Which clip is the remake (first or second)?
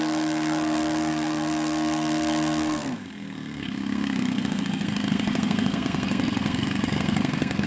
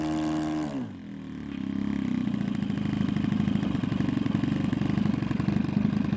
first